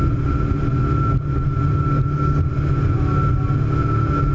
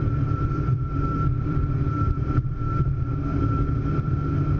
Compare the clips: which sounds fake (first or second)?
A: second